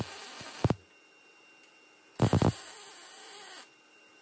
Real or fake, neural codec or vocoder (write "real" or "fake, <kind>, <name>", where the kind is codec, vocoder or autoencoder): real